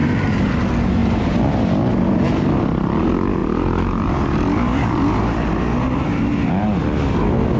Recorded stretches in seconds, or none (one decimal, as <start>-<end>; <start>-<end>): 0.5-1.0; 1.9-3.4; 6.5-7.6